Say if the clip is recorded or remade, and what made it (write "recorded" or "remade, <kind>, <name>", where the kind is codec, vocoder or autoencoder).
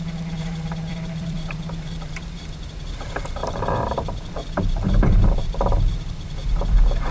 remade, vocoder, BigVGAN v2